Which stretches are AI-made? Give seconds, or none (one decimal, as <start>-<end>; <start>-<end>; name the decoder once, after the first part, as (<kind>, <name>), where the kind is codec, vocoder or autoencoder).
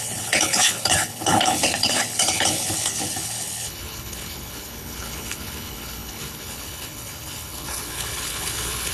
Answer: 0.0-8.9 (codec, HILCodec)